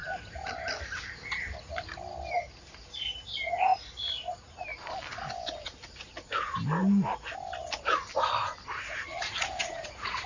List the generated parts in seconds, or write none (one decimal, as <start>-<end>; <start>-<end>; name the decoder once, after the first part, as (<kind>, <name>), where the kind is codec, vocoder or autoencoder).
9.1-10.3 (vocoder, Vocos)